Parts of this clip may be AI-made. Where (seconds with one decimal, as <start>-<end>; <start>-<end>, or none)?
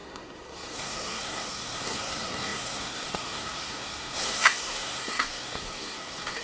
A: 0.0-6.4